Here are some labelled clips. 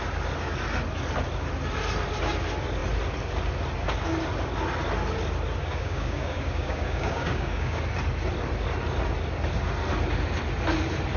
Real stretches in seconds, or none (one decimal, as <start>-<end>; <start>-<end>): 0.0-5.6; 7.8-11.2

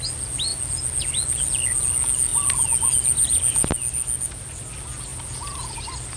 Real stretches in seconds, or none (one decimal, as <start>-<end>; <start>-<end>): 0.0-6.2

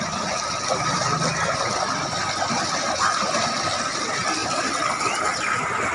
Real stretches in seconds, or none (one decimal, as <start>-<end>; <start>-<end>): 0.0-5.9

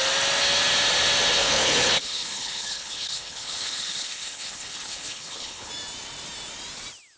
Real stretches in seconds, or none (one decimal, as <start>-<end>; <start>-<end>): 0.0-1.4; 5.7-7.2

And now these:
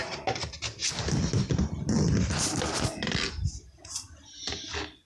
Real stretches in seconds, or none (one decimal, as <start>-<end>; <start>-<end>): 0.0-5.1

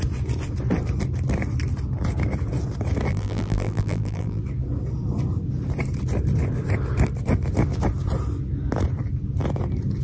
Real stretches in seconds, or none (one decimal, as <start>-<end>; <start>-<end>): 0.0-3.1; 4.4-10.0

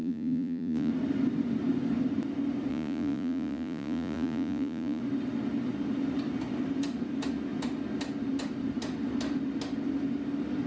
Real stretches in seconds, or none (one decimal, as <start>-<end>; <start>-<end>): 0.9-2.7; 5.0-10.7

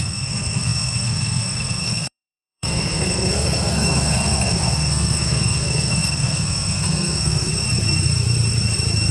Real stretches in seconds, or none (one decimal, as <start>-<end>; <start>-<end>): 7.5-9.1